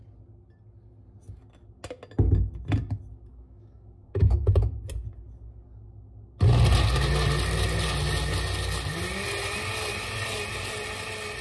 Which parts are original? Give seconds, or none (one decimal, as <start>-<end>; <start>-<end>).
0.0-3.3; 4.7-11.4